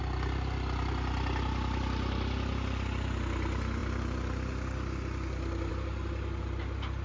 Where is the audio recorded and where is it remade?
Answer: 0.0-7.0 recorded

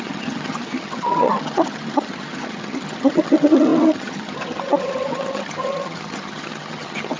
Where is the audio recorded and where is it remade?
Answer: 0.0-7.2 remade

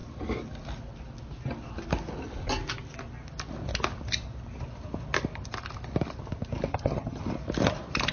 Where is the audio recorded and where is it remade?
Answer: 0.0-6.7 recorded; 6.7-7.2 remade; 7.2-8.1 recorded

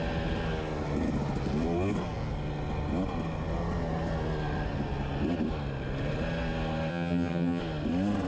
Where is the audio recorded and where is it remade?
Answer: 0.0-6.9 recorded; 6.9-7.6 remade; 7.6-8.3 recorded

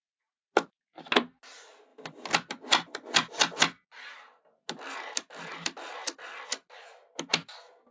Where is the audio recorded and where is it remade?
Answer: 0.0-7.9 recorded